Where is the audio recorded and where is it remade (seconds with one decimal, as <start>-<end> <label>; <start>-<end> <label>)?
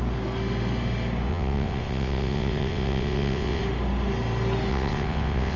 0.0-1.3 recorded; 1.3-3.6 remade; 3.6-4.7 recorded; 4.7-5.6 remade